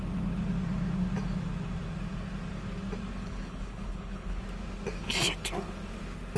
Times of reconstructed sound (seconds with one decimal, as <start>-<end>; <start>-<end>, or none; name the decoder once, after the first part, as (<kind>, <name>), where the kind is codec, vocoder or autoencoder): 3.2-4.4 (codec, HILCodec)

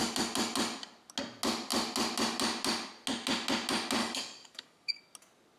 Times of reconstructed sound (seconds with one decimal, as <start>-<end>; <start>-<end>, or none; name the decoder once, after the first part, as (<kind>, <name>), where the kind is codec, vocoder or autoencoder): 4.0-5.0 (codec, DAC)

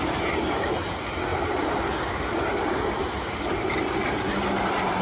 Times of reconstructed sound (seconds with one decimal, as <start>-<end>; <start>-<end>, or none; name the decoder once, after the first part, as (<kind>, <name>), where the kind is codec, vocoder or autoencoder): 1.3-4.3 (vocoder, BigVGAN v2)

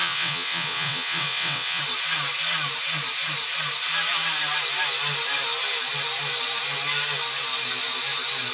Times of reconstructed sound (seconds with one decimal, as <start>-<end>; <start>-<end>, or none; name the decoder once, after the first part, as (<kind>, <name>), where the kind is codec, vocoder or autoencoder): 0.0-1.8 (vocoder, WaveNeXt)